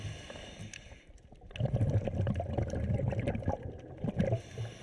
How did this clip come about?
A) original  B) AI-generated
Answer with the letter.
A